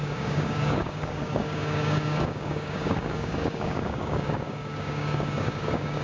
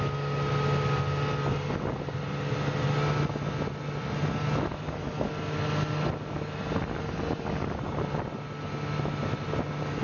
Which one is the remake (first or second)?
first